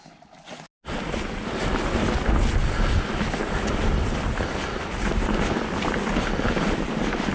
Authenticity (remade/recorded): recorded